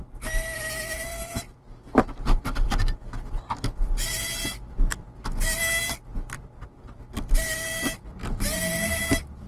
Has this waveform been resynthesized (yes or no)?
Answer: yes